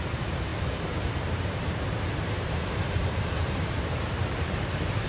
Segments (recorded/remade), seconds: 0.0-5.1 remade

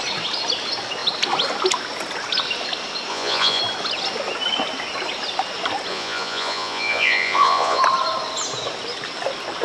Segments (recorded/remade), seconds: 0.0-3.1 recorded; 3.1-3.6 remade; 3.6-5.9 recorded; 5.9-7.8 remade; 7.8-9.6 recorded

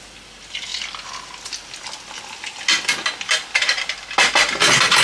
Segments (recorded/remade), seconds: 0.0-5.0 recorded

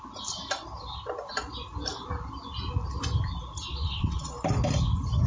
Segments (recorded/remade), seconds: 0.0-3.7 recorded; 3.7-4.4 remade; 4.4-5.3 recorded